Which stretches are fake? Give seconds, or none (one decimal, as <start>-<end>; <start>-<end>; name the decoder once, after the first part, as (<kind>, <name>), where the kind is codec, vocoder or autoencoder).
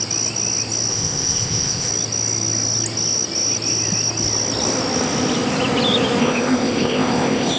0.9-1.9 (codec, ZipCodec); 6.2-7.6